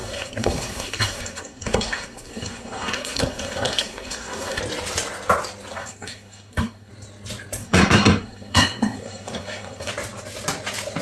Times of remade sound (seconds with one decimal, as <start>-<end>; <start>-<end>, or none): 0.0-4.6; 5.7-6.9; 7.6-9.9